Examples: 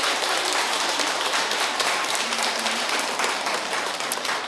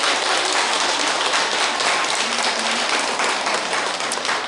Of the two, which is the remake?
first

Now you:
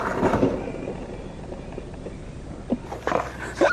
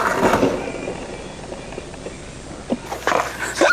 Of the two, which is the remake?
first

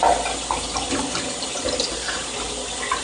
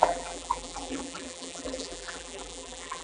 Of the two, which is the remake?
second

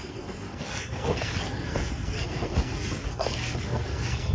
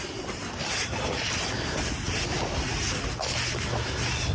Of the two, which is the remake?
first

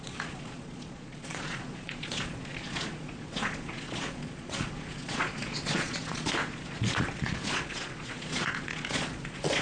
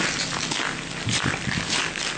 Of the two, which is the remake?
first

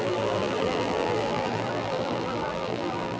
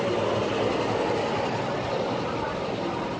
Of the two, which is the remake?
first